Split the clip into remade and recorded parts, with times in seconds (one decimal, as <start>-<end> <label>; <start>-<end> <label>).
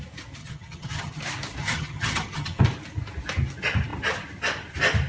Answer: 0.0-0.4 recorded; 0.4-1.2 remade; 1.2-1.6 recorded; 1.6-2.6 remade; 2.6-5.1 recorded